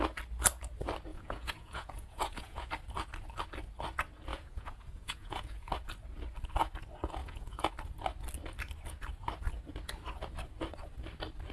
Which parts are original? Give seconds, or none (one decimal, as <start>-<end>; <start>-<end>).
0.0-1.1; 2.7-4.3; 5.7-7.2; 7.7-11.5